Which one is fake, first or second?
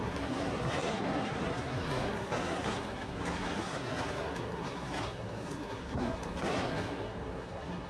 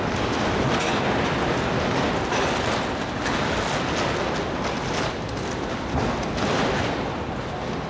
first